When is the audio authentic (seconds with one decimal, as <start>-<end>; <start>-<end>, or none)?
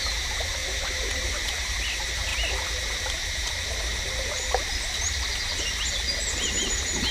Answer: 0.0-0.6; 1.7-7.1